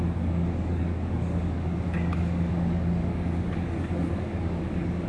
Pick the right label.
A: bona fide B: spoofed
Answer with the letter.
B